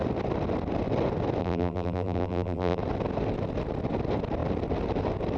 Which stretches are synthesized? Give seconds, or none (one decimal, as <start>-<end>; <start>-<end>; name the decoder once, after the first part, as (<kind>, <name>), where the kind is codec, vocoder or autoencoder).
1.4-2.8 (vocoder, BigVGAN v2)